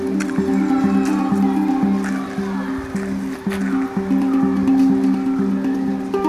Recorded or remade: recorded